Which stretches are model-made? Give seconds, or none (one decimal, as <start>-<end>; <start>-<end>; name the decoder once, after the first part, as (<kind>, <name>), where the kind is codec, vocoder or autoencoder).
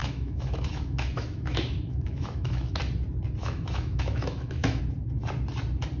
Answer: 0.0-2.7 (autoencoder, DAC-VAE); 3.4-4.8